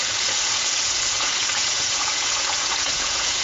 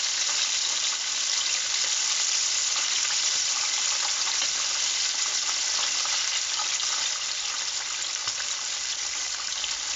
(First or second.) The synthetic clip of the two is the first